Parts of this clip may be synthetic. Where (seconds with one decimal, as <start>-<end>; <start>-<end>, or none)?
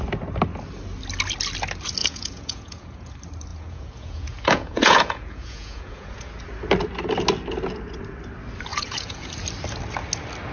2.0-3.1; 3.5-6.3; 8.7-9.3